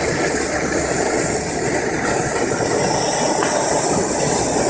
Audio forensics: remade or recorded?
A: recorded